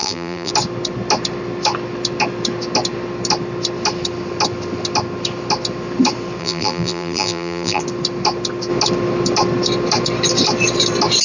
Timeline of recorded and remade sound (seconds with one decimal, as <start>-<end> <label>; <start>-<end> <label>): 0.0-0.5 remade; 0.5-6.4 recorded; 6.4-7.8 remade; 7.8-11.2 recorded